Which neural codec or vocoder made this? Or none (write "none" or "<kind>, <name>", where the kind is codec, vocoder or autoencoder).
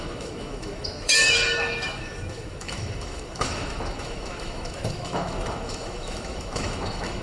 autoencoder, DAC-VAE